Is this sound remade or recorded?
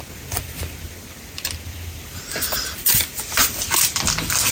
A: remade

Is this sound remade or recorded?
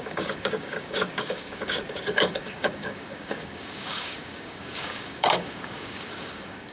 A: remade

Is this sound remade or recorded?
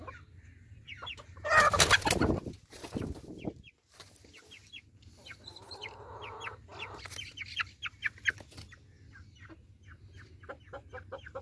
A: recorded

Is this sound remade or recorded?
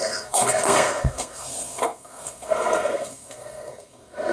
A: remade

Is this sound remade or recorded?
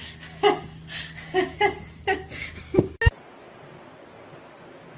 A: recorded